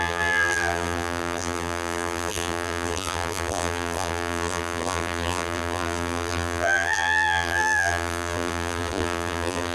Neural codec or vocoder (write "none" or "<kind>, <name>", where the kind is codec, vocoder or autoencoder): vocoder, BigVGAN v2